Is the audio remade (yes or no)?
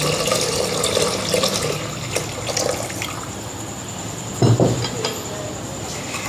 no